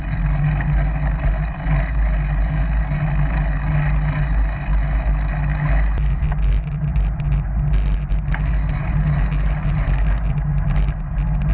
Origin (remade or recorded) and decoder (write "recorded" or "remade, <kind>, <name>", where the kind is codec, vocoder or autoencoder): recorded